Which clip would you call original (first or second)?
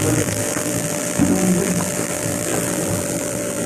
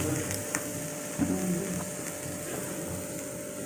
second